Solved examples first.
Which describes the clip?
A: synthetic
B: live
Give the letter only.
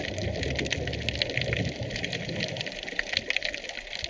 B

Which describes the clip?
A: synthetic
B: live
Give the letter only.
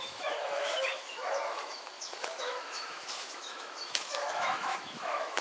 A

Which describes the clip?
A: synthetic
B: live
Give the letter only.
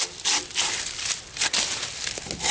B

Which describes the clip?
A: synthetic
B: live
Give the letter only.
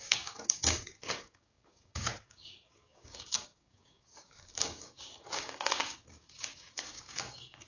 A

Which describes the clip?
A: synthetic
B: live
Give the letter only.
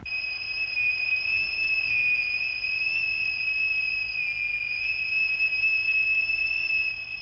B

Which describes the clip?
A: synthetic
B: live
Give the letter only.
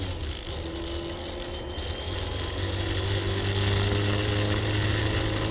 B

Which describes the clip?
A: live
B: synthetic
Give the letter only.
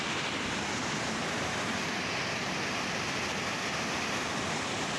A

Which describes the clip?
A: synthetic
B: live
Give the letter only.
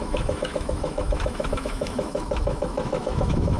A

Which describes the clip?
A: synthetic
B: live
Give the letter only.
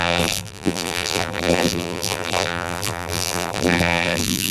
A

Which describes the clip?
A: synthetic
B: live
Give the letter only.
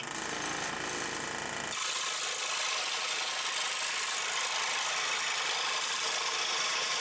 B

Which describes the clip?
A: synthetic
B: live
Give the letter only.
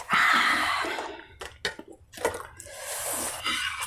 B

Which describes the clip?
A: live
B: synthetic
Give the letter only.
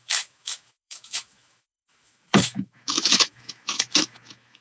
B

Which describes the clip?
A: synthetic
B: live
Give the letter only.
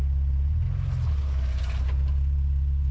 B